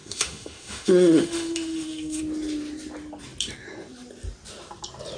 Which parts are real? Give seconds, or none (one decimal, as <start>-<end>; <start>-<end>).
2.2-5.2